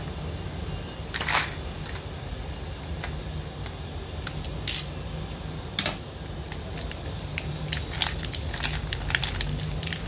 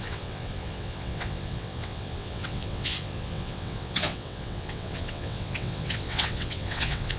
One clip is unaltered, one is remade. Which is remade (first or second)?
second